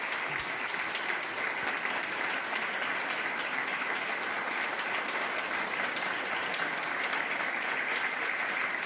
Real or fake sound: real